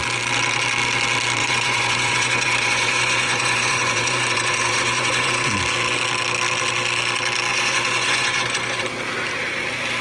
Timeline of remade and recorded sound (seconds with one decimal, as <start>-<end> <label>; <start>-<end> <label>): 0.0-1.4 recorded; 1.4-5.5 remade; 5.5-7.5 recorded; 7.5-8.8 remade; 8.8-10.0 recorded

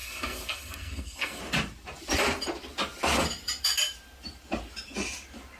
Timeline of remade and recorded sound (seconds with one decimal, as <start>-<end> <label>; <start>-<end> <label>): 0.0-1.4 remade; 1.4-5.6 recorded

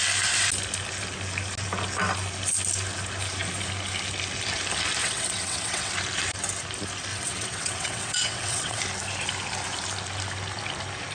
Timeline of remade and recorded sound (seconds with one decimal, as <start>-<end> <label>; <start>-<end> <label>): 0.0-5.0 recorded; 5.0-5.9 remade; 5.9-7.1 recorded; 7.1-8.8 remade; 8.8-11.1 recorded